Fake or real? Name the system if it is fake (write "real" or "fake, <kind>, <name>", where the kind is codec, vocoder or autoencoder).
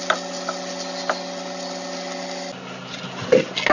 real